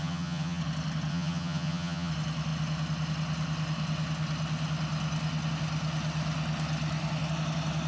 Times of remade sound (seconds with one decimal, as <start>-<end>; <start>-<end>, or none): 0.0-0.6; 1.1-2.1